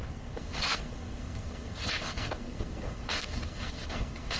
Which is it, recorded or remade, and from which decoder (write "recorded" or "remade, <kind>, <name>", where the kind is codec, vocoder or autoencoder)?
remade, codec, SNAC